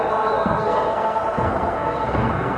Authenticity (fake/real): fake